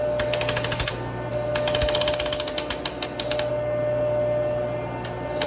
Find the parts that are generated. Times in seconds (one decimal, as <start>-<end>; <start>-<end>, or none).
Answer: none